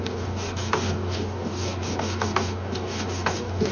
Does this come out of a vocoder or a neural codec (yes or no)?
yes